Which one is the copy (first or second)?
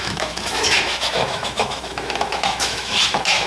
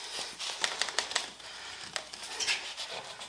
first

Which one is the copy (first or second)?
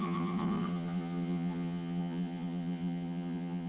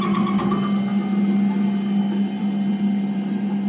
first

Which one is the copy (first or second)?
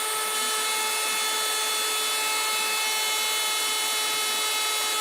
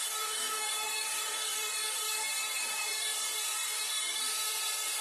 second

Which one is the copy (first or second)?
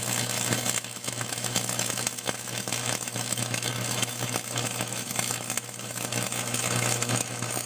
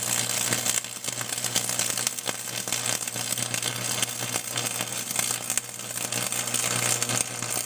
first